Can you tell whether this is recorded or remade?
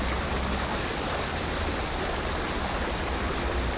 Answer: recorded